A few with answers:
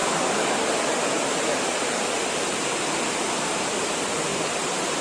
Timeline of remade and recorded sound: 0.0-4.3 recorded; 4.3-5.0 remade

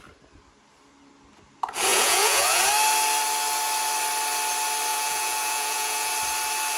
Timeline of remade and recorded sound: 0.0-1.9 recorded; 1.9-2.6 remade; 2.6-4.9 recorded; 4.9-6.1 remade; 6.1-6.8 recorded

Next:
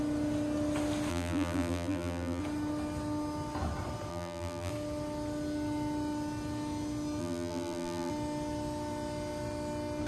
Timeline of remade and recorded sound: 0.0-1.1 recorded; 1.1-2.4 remade; 2.4-4.1 recorded; 4.1-4.7 remade; 4.7-7.2 recorded; 7.2-8.1 remade; 8.1-10.1 recorded

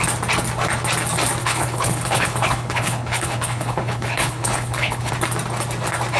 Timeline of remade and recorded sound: 0.0-1.4 recorded; 1.4-5.1 remade; 5.1-6.2 recorded